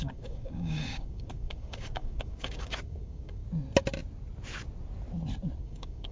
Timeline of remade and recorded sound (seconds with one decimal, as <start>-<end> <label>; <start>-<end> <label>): 0.0-3.4 remade; 3.4-5.6 recorded; 5.6-6.1 remade